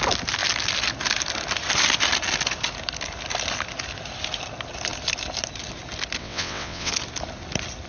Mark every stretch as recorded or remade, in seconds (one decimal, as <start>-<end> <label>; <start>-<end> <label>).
0.0-6.2 recorded; 6.2-6.9 remade; 6.9-7.9 recorded